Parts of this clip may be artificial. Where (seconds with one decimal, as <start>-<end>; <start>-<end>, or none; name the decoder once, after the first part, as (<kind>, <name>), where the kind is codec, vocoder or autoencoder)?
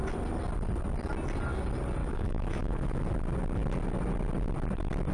2.0-3.0 (autoencoder, DAC-VAE)